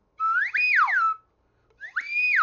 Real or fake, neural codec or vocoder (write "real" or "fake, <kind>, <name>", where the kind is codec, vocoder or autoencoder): real